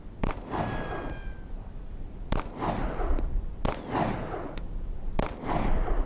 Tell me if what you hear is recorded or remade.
recorded